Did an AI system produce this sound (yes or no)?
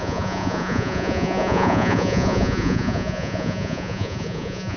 yes